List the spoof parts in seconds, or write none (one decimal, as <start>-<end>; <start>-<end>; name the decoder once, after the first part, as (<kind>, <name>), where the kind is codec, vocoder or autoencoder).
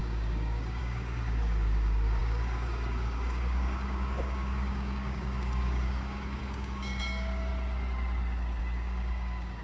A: 0.0-7.5 (codec, DAC); 8.6-9.6